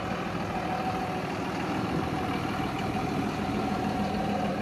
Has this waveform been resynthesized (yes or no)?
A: yes